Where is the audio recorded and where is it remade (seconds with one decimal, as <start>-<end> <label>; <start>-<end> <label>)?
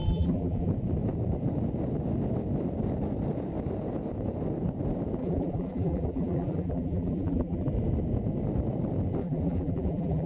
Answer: 0.0-0.7 remade; 0.7-5.2 recorded; 5.2-7.7 remade; 7.7-9.2 recorded; 9.2-10.3 remade